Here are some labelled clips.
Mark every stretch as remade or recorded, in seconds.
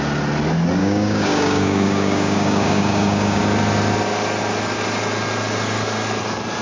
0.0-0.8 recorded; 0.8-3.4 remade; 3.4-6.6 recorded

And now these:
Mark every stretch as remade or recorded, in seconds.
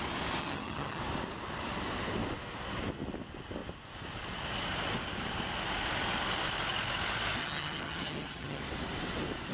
0.0-0.4 recorded; 0.4-1.0 remade; 1.0-7.4 recorded; 7.4-8.6 remade; 8.6-9.5 recorded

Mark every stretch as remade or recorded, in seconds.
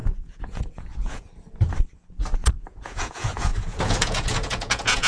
0.0-1.3 remade; 1.3-2.5 recorded; 2.5-5.1 remade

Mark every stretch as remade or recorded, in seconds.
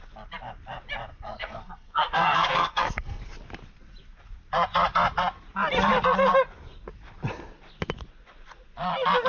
0.0-1.1 recorded; 1.1-3.2 remade; 3.2-9.3 recorded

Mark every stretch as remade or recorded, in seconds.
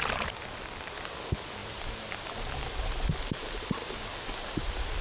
0.0-5.0 recorded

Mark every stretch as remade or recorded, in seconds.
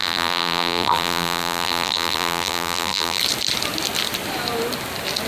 0.0-3.2 remade; 3.2-5.3 recorded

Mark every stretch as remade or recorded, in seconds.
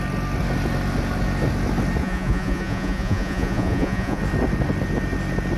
0.0-2.0 recorded; 2.0-4.2 remade; 4.2-5.6 recorded